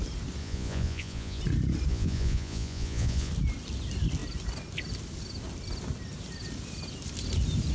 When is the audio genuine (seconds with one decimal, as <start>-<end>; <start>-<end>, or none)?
0.0-0.4; 1.4-1.9; 3.3-7.7